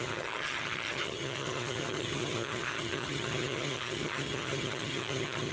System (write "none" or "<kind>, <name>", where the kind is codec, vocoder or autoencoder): vocoder, HiFi-GAN